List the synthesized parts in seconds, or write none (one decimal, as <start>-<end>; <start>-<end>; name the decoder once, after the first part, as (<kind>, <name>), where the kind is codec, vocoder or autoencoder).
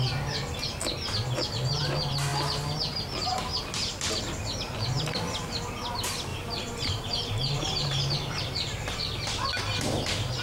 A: 6.3-9.6 (vocoder, BigVGAN v2)